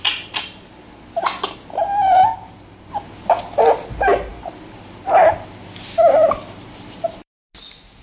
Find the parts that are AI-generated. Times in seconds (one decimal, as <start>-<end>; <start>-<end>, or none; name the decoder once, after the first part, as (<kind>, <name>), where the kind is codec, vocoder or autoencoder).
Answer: 2.3-2.9 (vocoder, BigVGAN v2); 4.3-7.3